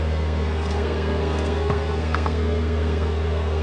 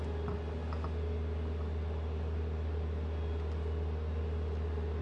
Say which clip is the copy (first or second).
first